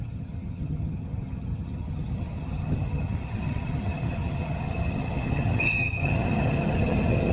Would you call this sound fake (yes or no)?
yes